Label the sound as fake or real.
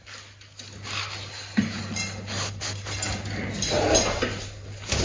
real